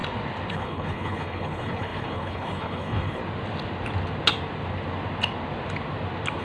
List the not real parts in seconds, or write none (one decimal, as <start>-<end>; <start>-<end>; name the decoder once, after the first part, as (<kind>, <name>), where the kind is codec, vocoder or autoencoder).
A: 0.5-3.2 (codec, HILCodec)